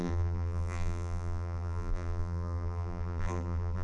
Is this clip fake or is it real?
fake